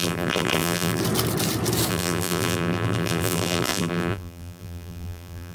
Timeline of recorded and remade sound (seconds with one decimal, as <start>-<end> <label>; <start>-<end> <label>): 0.0-1.0 remade; 1.0-1.9 recorded; 1.9-5.5 remade